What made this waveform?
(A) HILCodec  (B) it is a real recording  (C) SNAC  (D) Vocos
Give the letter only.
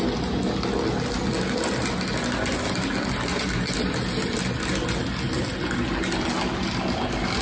B